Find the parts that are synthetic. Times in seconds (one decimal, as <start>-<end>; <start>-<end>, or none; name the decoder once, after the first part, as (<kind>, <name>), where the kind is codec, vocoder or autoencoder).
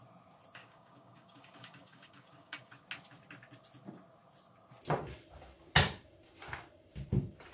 0.6-2.8 (codec, DAC)